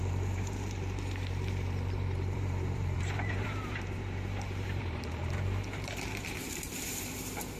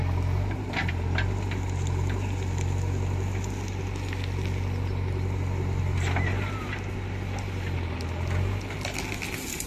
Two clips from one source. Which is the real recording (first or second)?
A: second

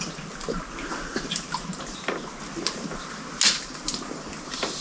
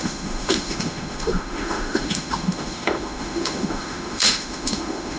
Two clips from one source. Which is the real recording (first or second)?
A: first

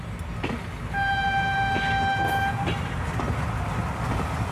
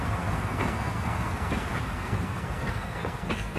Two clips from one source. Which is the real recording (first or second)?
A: first